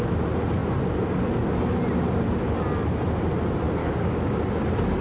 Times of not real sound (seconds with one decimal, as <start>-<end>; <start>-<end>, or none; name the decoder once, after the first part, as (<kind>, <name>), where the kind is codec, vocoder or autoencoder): 3.8-4.4 (codec, DAC)